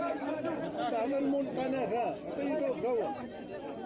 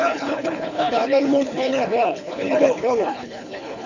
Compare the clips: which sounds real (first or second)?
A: first